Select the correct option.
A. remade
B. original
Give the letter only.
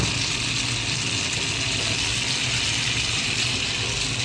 B